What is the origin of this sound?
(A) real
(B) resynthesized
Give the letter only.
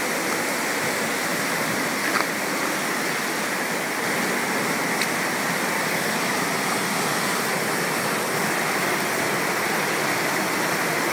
A